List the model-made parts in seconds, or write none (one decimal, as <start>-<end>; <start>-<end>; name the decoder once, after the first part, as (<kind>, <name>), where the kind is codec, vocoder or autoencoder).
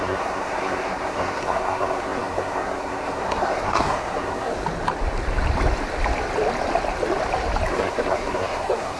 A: 0.0-4.5 (codec, SNAC); 7.7-9.0